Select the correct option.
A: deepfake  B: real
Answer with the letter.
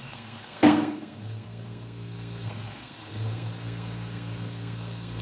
A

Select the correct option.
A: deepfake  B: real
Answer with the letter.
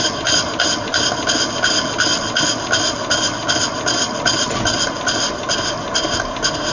B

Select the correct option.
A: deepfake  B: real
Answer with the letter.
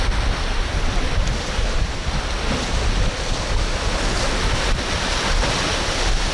B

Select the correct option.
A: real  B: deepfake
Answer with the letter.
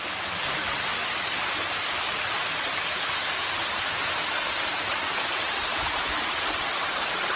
B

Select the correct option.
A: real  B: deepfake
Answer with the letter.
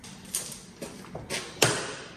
B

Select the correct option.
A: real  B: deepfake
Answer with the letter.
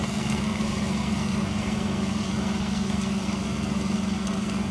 B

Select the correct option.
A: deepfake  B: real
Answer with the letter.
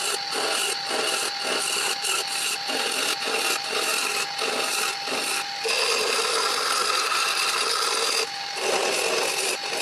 B